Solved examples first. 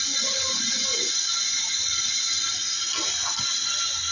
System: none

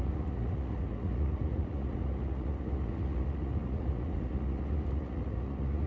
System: vocoder, Vocos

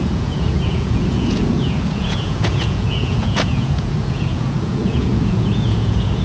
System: vocoder, Vocos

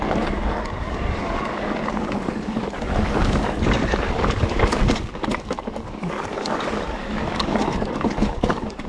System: codec, DAC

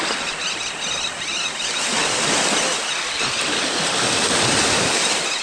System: none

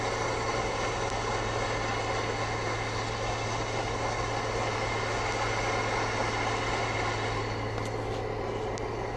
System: none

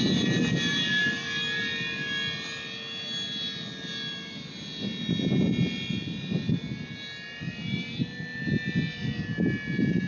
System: none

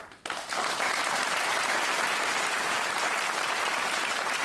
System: vocoder, BigVGAN v2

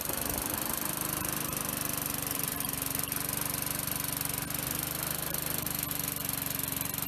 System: none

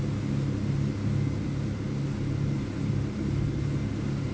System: none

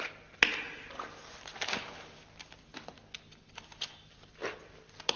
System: none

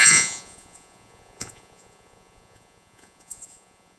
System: vocoder, Vocos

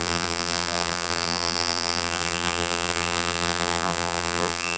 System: vocoder, BigVGAN v2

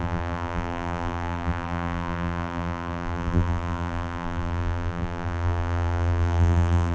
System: vocoder, BigVGAN v2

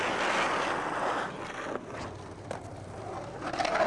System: none